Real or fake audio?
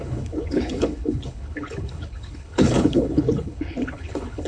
fake